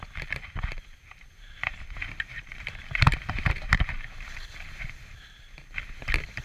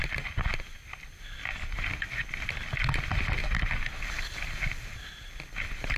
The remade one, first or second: first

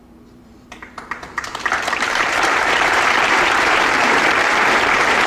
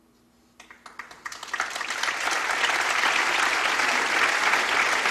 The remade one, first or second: first